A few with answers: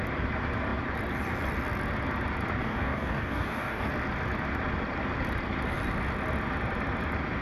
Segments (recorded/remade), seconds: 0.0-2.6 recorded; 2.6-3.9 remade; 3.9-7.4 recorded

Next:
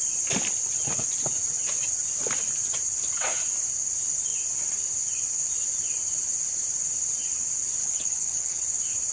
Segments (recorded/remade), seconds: 0.0-7.8 recorded; 7.8-8.6 remade; 8.6-9.1 recorded

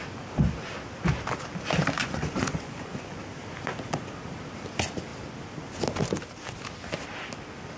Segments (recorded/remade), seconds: 0.0-2.0 recorded; 2.0-3.2 remade; 3.2-7.8 recorded

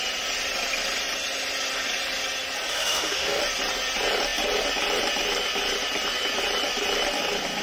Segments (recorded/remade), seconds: 0.0-2.7 recorded; 2.7-3.4 remade; 3.4-7.6 recorded

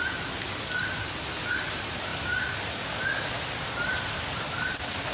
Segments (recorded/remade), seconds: 0.0-5.1 recorded

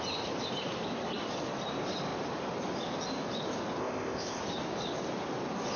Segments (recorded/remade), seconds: 0.0-3.8 recorded; 3.8-4.4 remade; 4.4-5.8 recorded

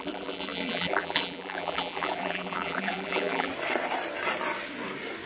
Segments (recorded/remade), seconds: 0.0-3.5 remade; 3.5-5.3 recorded

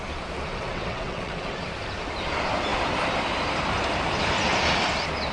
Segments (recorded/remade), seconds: 0.0-0.5 recorded; 0.5-1.6 remade; 1.6-5.3 recorded